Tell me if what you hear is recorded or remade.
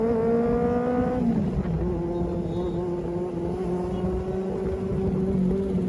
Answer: recorded